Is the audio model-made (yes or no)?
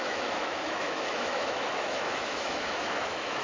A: yes